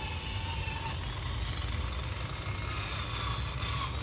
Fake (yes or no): no